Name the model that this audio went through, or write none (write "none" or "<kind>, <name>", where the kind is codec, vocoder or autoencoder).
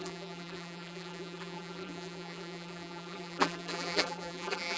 vocoder, BigVGAN v2